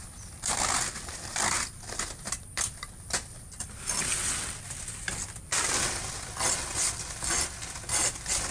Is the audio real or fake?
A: real